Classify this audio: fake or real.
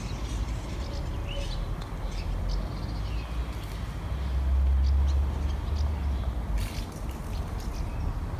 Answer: real